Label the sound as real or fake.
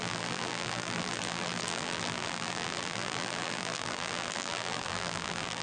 fake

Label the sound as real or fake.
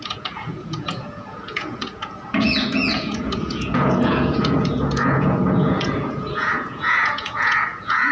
fake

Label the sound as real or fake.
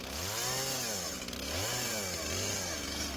real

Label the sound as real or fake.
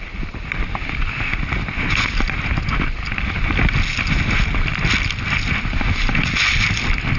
real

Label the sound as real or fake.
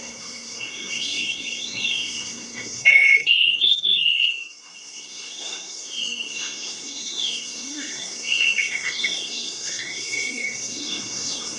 fake